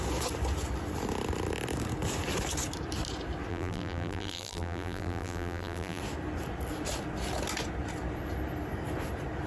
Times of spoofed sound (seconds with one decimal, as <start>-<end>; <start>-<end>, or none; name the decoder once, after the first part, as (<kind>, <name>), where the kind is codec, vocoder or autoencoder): 3.5-6.0 (vocoder, BigVGAN v2)